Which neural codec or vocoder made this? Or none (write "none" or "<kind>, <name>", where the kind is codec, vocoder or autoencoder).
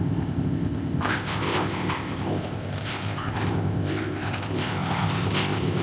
codec, ZipCodec